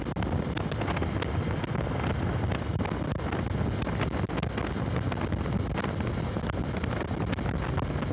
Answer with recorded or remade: recorded